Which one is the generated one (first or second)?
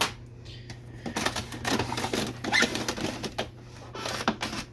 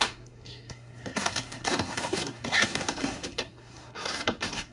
second